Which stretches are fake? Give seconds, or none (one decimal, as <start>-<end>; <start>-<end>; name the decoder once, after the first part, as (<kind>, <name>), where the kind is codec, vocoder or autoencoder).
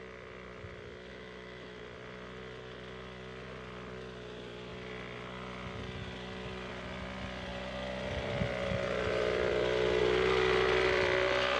1.1-1.8 (autoencoder, DAC-VAE)